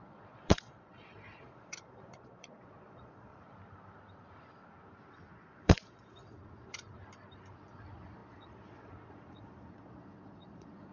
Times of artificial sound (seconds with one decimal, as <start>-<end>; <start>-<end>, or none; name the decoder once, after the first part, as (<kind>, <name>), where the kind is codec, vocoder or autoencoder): 0.0-3.3 (vocoder, Vocos); 5.3-7.0; 7.5-10.9